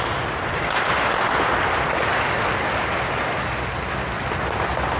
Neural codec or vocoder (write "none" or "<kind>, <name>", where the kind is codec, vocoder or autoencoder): none